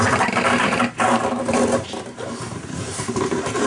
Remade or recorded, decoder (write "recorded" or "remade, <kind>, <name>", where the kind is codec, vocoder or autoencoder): remade, vocoder, BigVGAN v2